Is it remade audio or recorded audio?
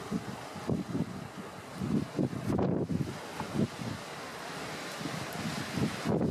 recorded